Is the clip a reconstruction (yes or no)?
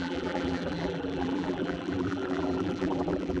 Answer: yes